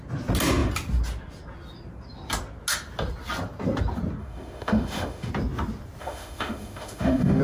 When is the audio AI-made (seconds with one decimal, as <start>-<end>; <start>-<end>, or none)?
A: 4.2-5.3; 6.0-7.4